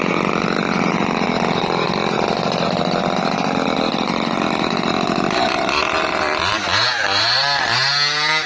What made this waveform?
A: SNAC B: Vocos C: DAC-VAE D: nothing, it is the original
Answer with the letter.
D